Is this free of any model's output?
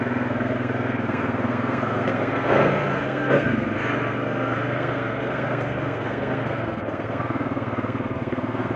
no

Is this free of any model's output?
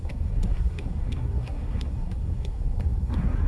no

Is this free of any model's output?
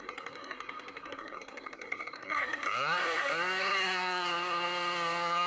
no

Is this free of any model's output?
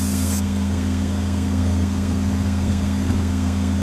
no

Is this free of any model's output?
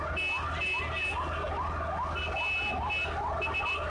yes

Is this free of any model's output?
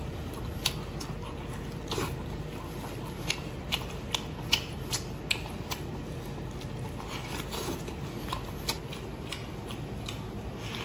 yes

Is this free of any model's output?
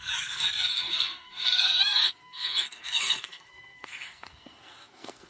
no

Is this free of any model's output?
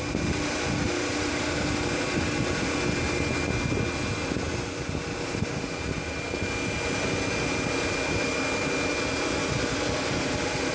yes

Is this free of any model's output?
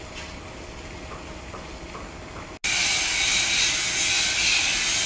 yes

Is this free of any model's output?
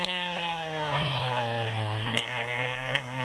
no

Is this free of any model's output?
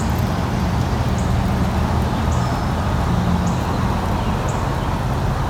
yes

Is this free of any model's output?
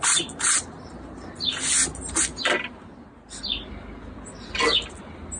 yes